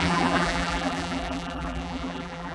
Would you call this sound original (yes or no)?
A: no